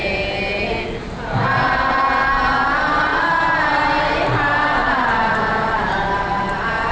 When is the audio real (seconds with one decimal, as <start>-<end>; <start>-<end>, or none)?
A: 0.0-1.4; 2.0-4.8